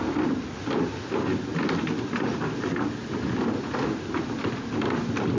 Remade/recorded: recorded